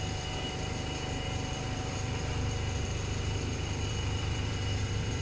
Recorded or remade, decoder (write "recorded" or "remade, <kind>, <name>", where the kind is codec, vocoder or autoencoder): remade, vocoder, BigVGAN v2